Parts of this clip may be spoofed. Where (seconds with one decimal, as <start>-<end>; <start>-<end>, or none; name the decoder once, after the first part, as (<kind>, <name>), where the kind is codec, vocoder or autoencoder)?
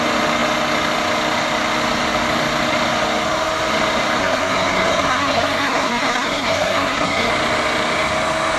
4.2-7.3 (codec, SNAC)